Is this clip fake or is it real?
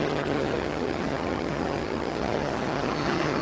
fake